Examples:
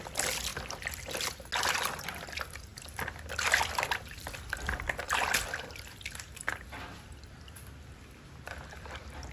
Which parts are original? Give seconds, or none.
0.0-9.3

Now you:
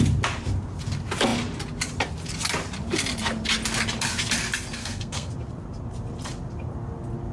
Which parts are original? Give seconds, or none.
0.0-4.8; 5.3-7.3

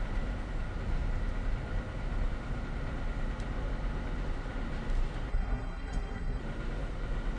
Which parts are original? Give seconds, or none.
0.0-5.3; 6.4-7.4

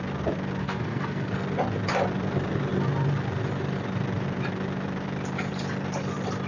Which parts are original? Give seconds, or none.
0.0-0.6; 1.3-6.5

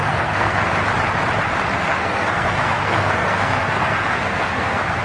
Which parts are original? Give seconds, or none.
0.7-1.7